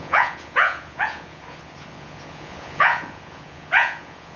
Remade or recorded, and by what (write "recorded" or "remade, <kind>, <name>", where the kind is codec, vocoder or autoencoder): remade, vocoder, Vocos